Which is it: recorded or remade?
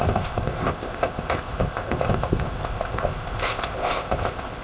remade